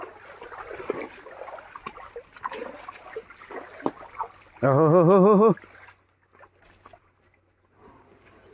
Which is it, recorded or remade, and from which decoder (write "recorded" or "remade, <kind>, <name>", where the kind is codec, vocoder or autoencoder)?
recorded